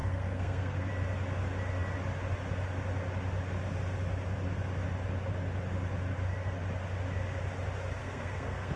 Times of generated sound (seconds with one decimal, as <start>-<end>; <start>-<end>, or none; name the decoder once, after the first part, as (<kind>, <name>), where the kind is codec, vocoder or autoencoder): 0.0-0.9 (codec, SNAC); 8.0-8.8